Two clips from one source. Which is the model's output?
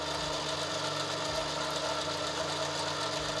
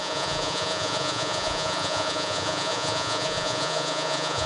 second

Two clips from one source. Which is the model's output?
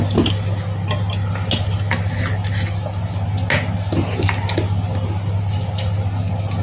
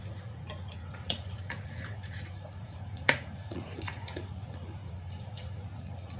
second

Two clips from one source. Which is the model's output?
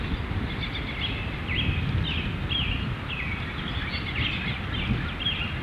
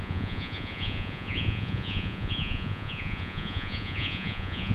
second